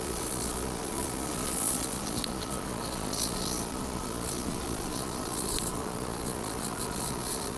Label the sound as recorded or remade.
remade